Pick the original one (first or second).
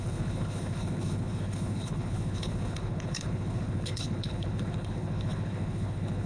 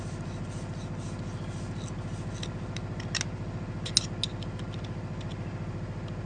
second